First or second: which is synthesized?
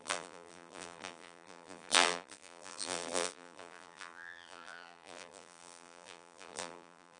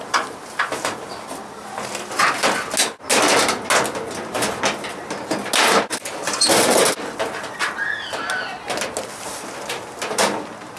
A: first